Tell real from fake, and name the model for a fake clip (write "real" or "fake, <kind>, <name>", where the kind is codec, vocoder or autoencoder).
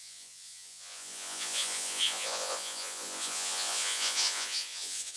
fake, vocoder, Vocos